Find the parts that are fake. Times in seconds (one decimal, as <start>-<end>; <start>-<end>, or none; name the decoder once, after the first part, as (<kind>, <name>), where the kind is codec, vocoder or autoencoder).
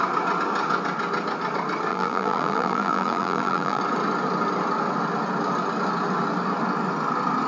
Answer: 1.9-3.8 (vocoder, BigVGAN v2)